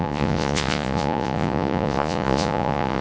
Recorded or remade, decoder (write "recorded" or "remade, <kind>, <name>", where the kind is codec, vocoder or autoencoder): remade, vocoder, Vocos